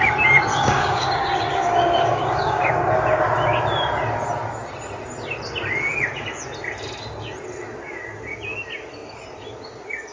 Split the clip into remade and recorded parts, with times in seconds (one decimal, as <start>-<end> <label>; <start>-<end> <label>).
0.0-0.5 recorded; 0.5-2.7 remade; 2.7-10.1 recorded